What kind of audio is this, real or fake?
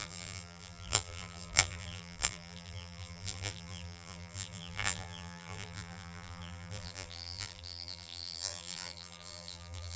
fake